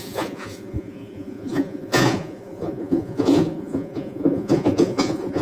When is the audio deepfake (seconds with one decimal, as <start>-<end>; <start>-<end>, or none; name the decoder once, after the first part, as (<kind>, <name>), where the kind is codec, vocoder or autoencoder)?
0.0-5.4 (vocoder, Vocos)